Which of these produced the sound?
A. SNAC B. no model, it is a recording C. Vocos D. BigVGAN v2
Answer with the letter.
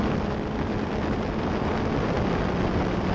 B